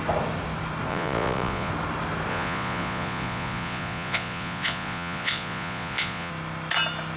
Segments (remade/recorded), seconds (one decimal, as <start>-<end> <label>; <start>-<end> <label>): 0.0-0.9 recorded; 0.9-1.7 remade; 1.7-2.3 recorded; 2.3-6.3 remade; 6.3-7.2 recorded